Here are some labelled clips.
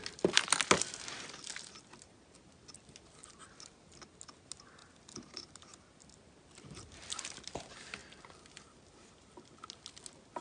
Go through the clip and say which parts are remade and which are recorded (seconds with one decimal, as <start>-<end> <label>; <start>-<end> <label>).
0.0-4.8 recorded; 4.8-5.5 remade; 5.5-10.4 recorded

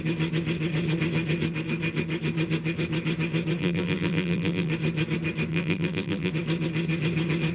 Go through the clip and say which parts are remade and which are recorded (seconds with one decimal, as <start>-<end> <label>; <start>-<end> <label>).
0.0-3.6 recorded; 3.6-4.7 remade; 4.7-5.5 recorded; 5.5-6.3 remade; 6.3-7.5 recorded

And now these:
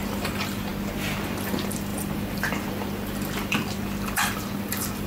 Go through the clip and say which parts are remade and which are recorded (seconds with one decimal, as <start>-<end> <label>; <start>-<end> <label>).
0.0-0.7 remade; 0.7-1.2 recorded; 1.2-5.1 remade

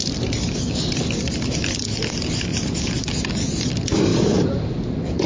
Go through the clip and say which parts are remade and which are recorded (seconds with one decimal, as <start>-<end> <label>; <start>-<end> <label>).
0.0-2.5 recorded; 2.5-3.0 remade; 3.0-4.1 recorded; 4.1-4.7 remade; 4.7-5.3 recorded

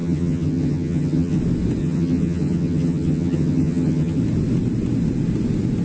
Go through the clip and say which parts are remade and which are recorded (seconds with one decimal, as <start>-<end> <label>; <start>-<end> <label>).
0.0-1.4 remade; 1.4-1.8 recorded; 1.8-4.2 remade; 4.2-5.8 recorded

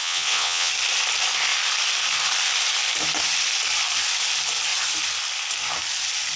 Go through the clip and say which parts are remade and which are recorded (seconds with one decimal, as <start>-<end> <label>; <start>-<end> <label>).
0.0-0.7 remade; 0.7-6.4 recorded